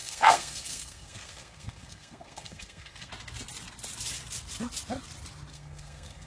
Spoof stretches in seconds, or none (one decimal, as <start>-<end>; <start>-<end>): 0.0-3.1; 5.5-6.3